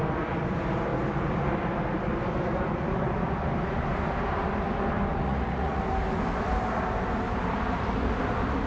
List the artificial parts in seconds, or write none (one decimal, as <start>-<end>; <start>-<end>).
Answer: 5.2-5.8